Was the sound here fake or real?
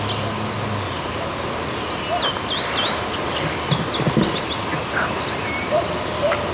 real